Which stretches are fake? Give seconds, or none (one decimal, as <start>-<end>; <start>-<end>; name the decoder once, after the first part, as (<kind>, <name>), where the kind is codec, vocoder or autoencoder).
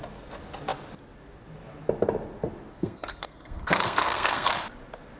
2.7-4.5 (codec, SNAC)